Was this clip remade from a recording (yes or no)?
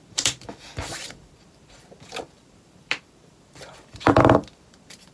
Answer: yes